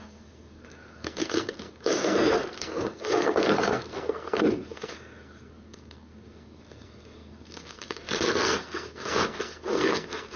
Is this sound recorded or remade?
remade